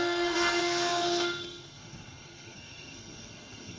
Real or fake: fake